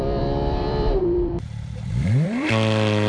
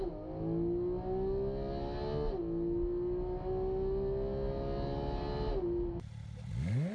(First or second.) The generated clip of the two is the first